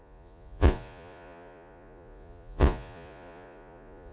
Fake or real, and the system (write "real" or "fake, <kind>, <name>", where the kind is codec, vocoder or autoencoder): fake, vocoder, Vocos